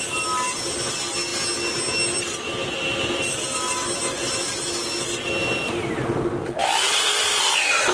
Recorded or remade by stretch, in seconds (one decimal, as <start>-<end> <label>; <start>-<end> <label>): 0.0-7.9 recorded